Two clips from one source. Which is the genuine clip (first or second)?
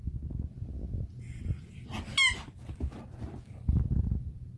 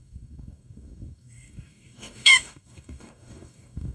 first